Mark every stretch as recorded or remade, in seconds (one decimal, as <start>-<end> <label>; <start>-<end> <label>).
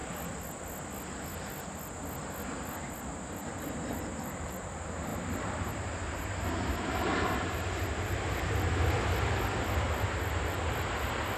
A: 0.0-5.1 recorded; 5.1-8.5 remade; 8.5-11.4 recorded